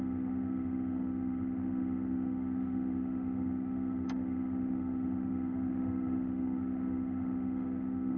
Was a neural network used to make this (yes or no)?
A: yes